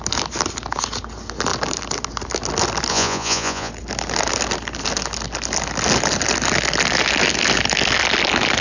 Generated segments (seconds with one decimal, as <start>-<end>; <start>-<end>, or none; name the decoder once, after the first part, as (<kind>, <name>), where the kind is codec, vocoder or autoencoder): 2.9-3.7 (vocoder, Vocos)